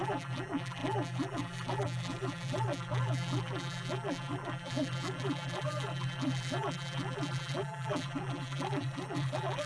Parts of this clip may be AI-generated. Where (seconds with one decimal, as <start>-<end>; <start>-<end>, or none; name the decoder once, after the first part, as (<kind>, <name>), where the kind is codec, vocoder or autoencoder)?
0.0-9.7 (vocoder, BigVGAN v2)